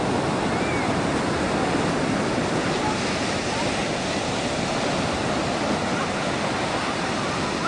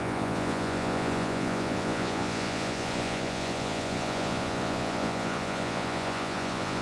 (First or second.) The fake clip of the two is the second